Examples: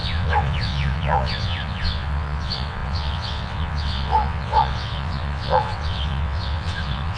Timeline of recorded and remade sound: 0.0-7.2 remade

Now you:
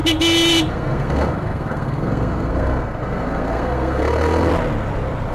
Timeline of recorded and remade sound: 0.0-0.7 recorded; 0.7-4.5 remade; 4.5-5.3 recorded

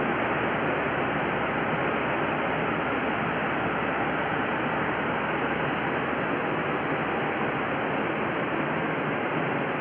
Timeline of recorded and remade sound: 0.0-9.8 recorded

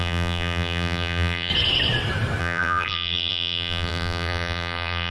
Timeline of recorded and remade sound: 0.0-1.5 remade; 1.5-2.4 recorded; 2.4-5.1 remade

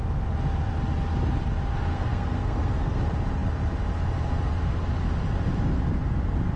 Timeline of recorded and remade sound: 0.0-1.9 recorded; 1.9-3.0 remade; 3.0-6.6 recorded